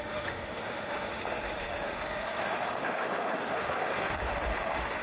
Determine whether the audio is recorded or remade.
remade